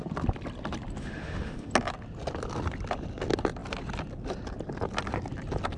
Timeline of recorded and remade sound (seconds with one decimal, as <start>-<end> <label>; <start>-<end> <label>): 0.0-1.0 recorded; 1.0-1.7 remade; 1.7-5.8 recorded